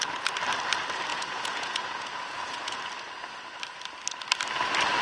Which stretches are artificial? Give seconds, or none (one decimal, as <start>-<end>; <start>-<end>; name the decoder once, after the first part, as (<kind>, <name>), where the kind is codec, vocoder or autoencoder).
1.1-2.8 (vocoder, Vocos)